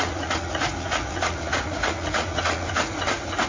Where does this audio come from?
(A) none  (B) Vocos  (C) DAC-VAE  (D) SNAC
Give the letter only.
B